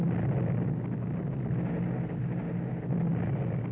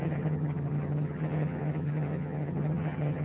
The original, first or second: first